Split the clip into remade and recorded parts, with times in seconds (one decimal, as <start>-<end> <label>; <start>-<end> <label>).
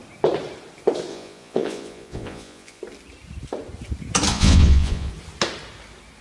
0.0-1.1 recorded; 1.1-2.8 remade; 2.8-4.3 recorded; 4.3-5.1 remade; 5.1-6.2 recorded